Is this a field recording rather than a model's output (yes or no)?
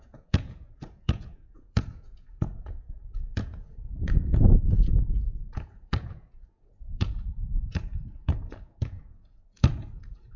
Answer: no